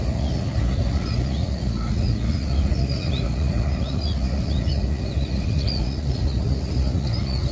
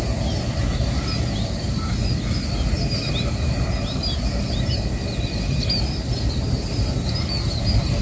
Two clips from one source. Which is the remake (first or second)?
first